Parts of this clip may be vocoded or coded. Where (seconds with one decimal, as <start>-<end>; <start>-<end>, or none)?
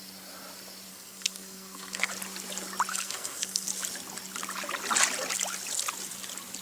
0.9-2.1; 2.9-3.7